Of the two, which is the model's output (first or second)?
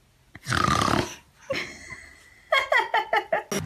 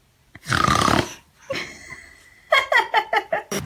second